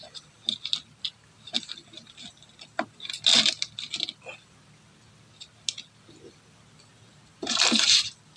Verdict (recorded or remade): recorded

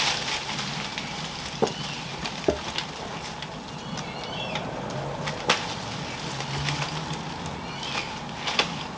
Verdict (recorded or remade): recorded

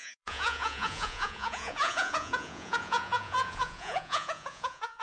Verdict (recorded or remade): remade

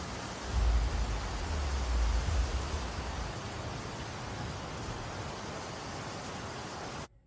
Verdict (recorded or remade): recorded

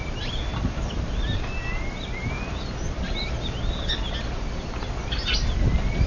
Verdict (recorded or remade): recorded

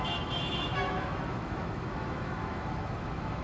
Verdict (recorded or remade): remade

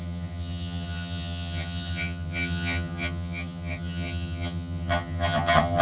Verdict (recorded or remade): remade